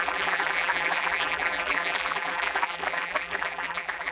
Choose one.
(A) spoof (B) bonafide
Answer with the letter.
A